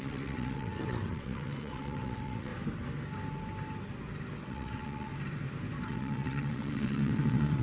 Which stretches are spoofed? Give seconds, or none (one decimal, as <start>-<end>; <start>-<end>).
0.0-2.5; 4.5-5.1; 5.9-7.6